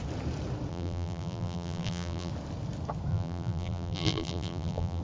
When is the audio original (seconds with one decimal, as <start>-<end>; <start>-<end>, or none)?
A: 0.0-0.7; 2.3-3.1